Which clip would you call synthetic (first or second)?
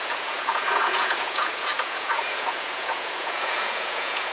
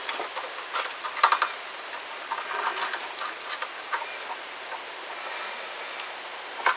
first